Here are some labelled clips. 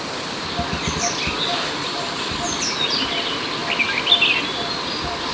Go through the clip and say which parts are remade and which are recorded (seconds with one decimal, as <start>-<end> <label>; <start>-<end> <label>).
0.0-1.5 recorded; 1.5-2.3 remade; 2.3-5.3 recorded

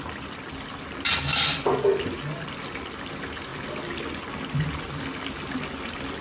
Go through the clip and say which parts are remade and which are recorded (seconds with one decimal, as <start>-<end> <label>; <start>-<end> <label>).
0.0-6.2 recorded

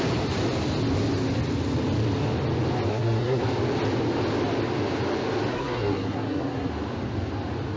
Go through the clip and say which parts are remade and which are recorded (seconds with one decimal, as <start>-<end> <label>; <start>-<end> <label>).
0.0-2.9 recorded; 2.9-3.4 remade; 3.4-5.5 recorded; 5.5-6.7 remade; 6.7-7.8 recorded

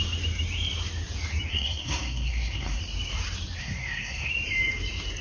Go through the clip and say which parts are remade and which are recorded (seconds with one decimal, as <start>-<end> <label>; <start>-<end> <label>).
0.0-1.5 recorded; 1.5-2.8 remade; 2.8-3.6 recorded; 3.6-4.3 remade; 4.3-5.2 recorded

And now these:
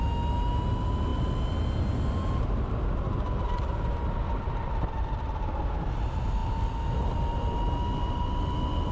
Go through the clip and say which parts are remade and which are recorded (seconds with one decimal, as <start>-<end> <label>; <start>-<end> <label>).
0.0-8.9 recorded